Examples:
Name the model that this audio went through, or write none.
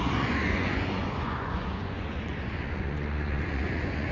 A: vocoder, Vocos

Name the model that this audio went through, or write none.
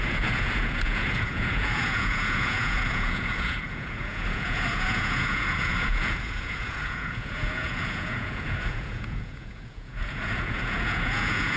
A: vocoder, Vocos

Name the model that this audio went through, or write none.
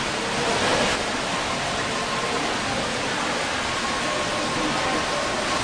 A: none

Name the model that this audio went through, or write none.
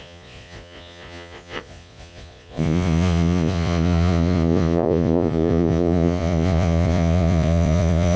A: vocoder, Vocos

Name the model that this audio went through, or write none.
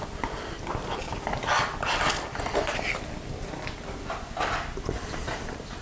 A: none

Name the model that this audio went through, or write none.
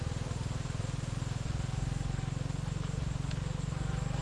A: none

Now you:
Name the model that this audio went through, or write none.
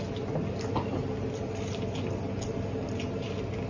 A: none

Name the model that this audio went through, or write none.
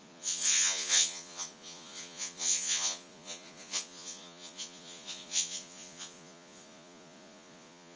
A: vocoder, Vocos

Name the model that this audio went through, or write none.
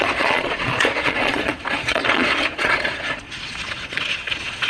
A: vocoder, Vocos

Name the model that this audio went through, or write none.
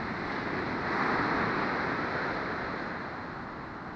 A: none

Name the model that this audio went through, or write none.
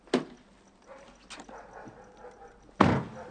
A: none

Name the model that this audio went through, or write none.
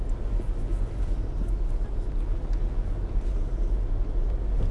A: none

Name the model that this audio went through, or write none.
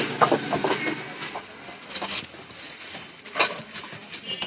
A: none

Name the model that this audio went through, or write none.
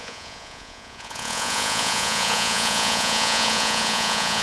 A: vocoder, Vocos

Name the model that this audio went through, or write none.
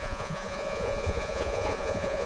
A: vocoder, Vocos